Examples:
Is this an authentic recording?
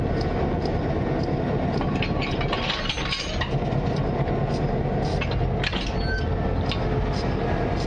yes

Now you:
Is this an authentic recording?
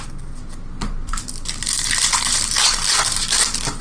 yes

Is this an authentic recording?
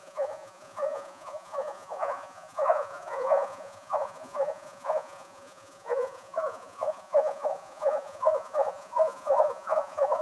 no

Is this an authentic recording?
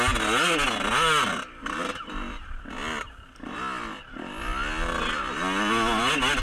yes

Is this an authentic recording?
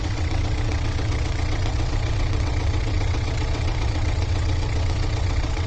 no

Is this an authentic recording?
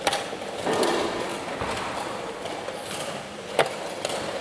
yes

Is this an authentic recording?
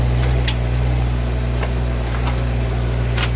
yes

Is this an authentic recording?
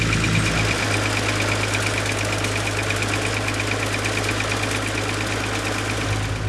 yes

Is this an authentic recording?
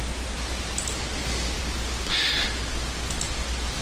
yes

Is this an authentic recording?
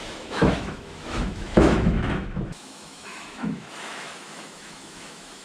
no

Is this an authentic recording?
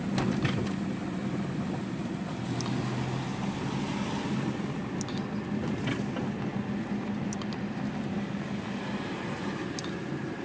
yes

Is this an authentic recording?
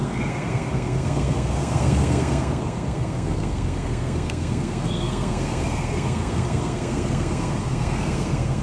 no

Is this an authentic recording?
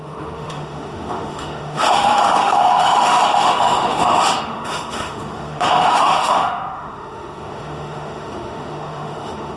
no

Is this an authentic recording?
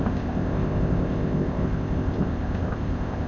no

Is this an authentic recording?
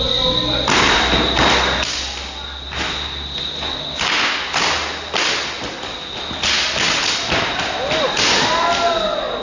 yes